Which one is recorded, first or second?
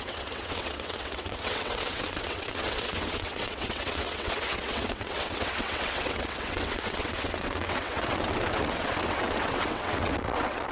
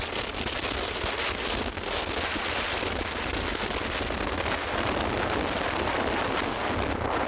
second